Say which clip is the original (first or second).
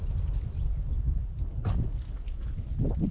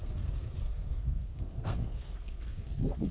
first